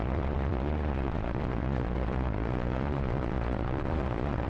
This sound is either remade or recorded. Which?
remade